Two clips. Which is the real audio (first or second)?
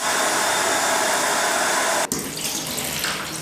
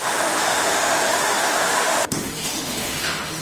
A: first